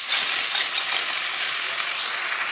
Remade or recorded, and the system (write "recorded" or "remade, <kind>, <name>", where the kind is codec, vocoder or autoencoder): recorded